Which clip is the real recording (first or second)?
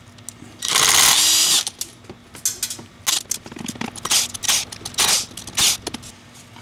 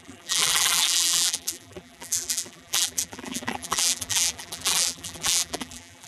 first